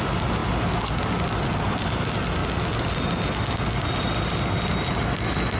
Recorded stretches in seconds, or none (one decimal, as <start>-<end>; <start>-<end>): 0.0-5.6